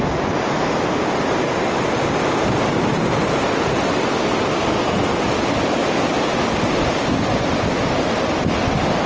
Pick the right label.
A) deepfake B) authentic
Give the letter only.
B